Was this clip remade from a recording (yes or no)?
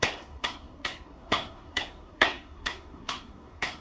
yes